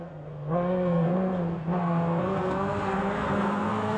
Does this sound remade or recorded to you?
remade